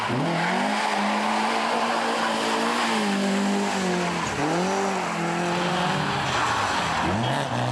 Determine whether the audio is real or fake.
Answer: real